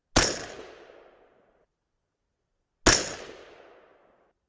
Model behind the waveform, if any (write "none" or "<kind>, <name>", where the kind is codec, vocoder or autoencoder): none